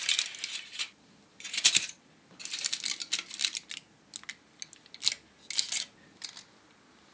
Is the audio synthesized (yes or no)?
no